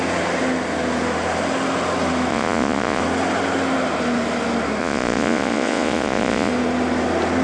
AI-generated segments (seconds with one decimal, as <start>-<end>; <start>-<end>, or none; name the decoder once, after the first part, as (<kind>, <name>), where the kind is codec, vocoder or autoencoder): 2.3-3.0 (vocoder, Vocos); 4.8-6.5